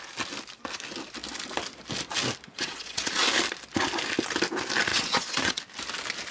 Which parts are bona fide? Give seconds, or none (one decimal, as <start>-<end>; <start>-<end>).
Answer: 0.0-2.5; 3.1-4.9; 5.6-6.3